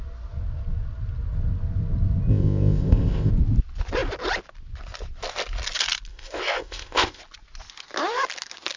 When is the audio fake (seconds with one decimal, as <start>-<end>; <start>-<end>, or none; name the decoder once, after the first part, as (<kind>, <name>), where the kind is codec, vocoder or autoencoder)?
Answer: 2.3-3.3 (codec, ZipCodec); 6.1-7.2